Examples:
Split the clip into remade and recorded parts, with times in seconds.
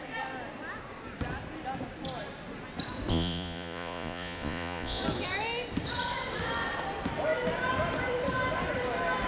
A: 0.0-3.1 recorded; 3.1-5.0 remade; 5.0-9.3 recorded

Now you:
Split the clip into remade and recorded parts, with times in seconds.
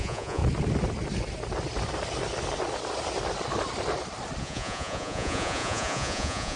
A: 0.0-0.4 remade; 0.4-4.4 recorded; 4.4-6.6 remade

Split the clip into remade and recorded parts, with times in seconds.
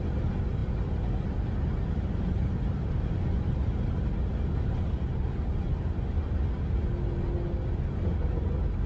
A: 0.0-8.9 recorded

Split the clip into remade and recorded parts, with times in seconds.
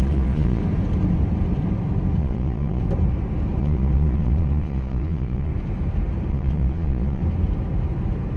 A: 0.0-0.6 remade; 0.6-2.2 recorded; 2.2-2.8 remade; 2.8-3.6 recorded; 3.6-5.5 remade; 5.5-6.3 recorded; 6.3-7.2 remade; 7.2-8.4 recorded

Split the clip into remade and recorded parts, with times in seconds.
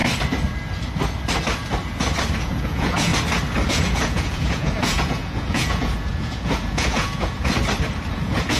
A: 0.0-2.4 recorded; 2.4-3.1 remade; 3.1-3.7 recorded; 3.7-7.6 remade; 7.6-8.1 recorded; 8.1-8.6 remade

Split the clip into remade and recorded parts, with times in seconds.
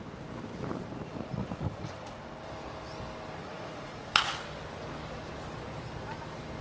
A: 0.0-1.1 recorded; 1.1-2.2 remade; 2.2-3.4 recorded; 3.4-4.1 remade; 4.1-6.6 recorded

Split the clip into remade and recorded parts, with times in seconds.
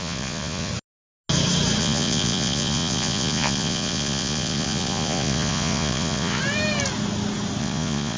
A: 0.0-0.7 remade; 0.7-1.8 recorded; 1.8-6.4 remade; 6.4-7.6 recorded; 7.6-8.2 remade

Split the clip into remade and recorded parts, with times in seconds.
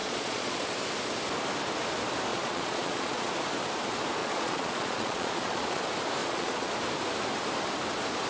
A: 0.0-0.7 remade; 0.7-2.3 recorded; 2.3-3.3 remade; 3.3-4.2 recorded; 4.2-5.8 remade; 5.8-6.2 recorded; 6.2-6.7 remade; 6.7-8.3 recorded